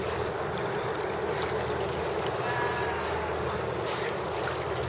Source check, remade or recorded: recorded